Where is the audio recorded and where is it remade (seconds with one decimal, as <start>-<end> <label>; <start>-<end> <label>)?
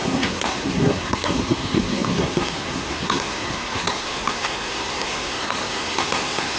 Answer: 0.0-6.6 remade